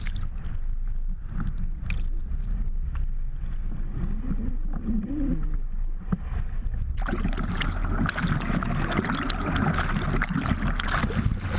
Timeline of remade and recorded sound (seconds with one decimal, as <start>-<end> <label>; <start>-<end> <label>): 0.0-11.6 recorded